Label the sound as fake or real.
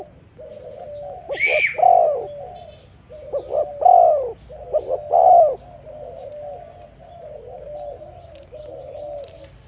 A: real